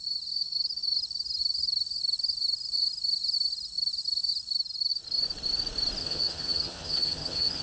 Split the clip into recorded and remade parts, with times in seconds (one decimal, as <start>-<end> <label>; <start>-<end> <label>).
0.0-6.0 recorded; 6.0-7.6 remade

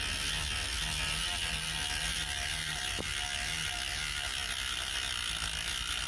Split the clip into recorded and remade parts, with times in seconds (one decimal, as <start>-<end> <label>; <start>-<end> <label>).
0.0-2.1 recorded; 2.1-3.0 remade; 3.0-4.4 recorded; 4.4-5.0 remade; 5.0-6.1 recorded